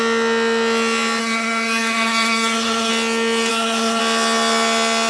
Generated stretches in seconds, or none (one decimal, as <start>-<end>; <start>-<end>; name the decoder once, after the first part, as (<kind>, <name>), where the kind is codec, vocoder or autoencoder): 1.2-2.9 (codec, SNAC); 3.5-4.0